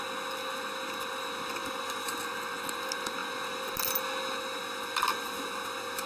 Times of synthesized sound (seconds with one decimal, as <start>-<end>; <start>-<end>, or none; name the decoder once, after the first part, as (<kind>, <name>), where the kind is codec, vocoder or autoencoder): none